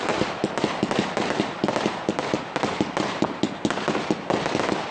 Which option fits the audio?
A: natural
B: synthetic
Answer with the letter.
A